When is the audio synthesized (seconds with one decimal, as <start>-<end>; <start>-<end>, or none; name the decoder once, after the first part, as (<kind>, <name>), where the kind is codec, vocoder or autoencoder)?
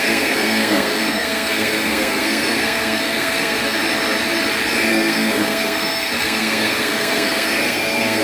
0.0-3.8 (codec, SNAC); 4.9-8.2